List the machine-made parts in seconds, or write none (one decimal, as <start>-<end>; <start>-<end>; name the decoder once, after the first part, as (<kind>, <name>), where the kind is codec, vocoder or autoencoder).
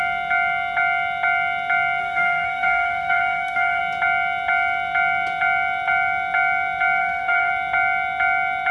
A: 2.0-3.8 (codec, SNAC); 7.0-7.5